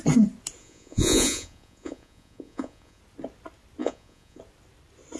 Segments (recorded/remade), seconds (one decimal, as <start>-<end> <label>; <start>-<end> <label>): 0.0-0.6 recorded; 0.6-3.0 remade; 3.0-3.8 recorded; 3.8-4.4 remade; 4.4-5.2 recorded

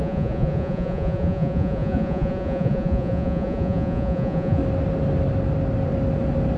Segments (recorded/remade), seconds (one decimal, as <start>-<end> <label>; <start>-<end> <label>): 0.0-4.6 remade; 4.6-6.6 recorded

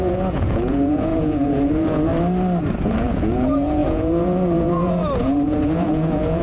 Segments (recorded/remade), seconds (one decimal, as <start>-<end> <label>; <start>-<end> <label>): 0.0-2.1 remade; 2.1-2.8 recorded; 2.8-6.4 remade

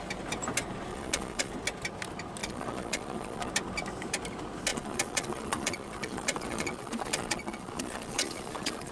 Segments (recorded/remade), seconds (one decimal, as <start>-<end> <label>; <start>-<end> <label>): 0.0-0.9 recorded; 0.9-1.5 remade; 1.5-2.4 recorded; 2.4-3.5 remade; 3.5-4.7 recorded; 4.7-8.9 remade

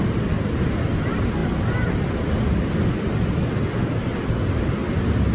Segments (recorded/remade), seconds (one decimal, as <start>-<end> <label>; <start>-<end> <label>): 0.0-5.3 recorded

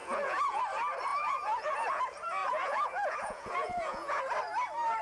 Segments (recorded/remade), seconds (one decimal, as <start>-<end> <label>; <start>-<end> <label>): 0.0-0.6 remade; 0.6-1.1 recorded; 1.1-2.0 remade; 2.0-2.4 recorded; 2.4-4.2 remade; 4.2-5.0 recorded

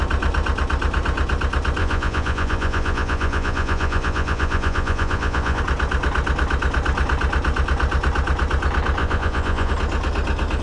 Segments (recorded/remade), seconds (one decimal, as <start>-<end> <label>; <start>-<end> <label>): 0.0-1.8 recorded; 1.8-5.6 remade; 5.6-9.0 recorded; 9.0-9.7 remade; 9.7-10.6 recorded